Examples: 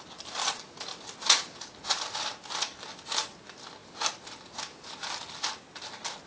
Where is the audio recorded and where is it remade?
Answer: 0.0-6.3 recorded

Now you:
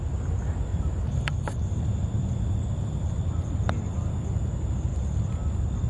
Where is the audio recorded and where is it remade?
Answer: 0.0-0.7 recorded; 0.7-3.4 remade; 3.4-5.9 recorded